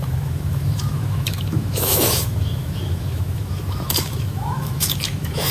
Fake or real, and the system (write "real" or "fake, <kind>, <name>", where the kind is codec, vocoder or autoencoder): fake, autoencoder, DAC-VAE